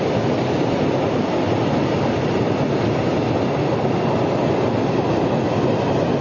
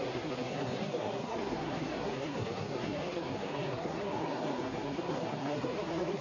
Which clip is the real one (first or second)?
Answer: first